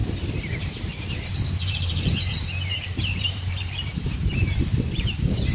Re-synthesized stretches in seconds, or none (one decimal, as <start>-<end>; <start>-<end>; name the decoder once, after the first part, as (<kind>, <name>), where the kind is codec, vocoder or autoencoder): 1.3-5.5 (vocoder, BigVGAN v2)